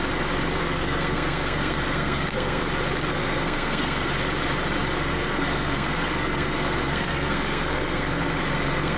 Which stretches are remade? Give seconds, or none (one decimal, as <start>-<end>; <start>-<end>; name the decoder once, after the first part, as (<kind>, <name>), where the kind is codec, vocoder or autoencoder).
0.6-2.6 (codec, SNAC); 3.1-4.1; 5.1-9.0